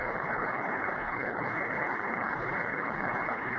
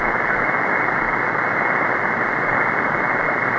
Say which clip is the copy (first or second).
first